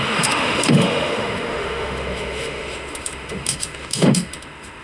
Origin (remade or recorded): remade